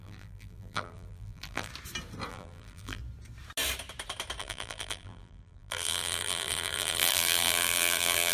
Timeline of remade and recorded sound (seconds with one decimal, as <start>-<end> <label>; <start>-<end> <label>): 0.0-1.7 remade; 1.7-2.3 recorded; 2.3-3.0 remade; 3.0-4.4 recorded; 4.4-8.3 remade